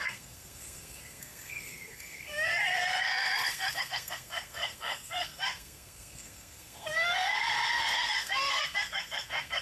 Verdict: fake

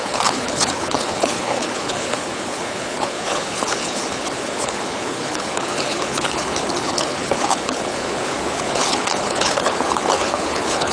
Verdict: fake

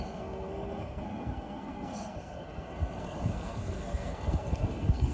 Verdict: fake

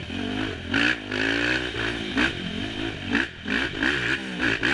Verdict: real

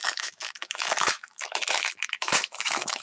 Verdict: fake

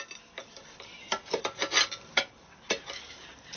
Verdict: real